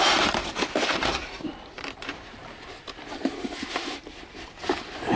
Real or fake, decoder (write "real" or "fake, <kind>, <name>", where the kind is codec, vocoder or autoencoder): fake, vocoder, BigVGAN v2